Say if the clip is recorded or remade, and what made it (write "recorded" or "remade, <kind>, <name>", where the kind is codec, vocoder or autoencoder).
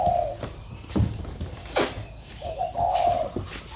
recorded